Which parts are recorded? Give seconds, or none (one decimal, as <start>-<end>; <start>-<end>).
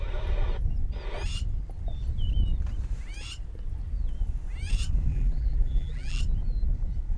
0.0-5.1; 6.2-7.2